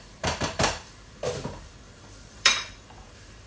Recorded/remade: remade